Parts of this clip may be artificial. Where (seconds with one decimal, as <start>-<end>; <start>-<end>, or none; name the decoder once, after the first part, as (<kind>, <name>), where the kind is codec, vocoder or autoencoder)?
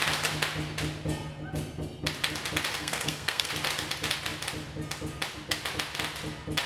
2.7-3.5 (codec, SNAC)